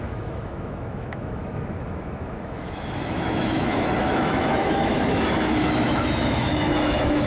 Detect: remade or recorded remade